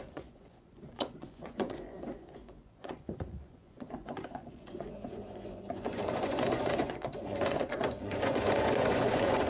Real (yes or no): no